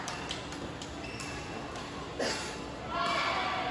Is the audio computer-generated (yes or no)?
no